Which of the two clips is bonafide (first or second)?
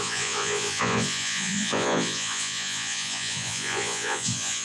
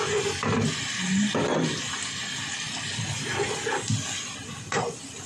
second